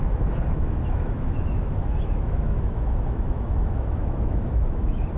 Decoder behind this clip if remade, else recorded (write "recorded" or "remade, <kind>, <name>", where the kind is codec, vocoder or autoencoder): remade, autoencoder, DAC-VAE